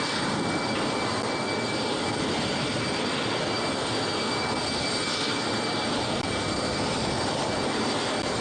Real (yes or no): yes